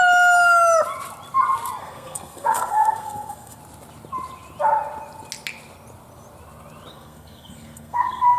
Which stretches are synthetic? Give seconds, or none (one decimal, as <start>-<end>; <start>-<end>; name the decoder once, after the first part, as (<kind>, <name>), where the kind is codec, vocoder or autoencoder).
1.8-3.6 (codec, SNAC); 6.9-8.4